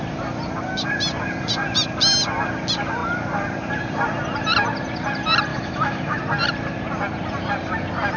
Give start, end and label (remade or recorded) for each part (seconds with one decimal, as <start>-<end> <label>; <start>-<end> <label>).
0.0-5.5 recorded; 5.5-6.2 remade; 6.2-8.2 recorded